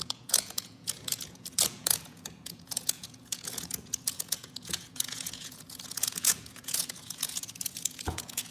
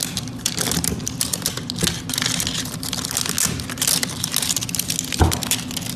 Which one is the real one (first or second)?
second